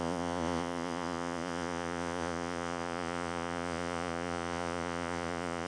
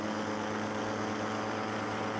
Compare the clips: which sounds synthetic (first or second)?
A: first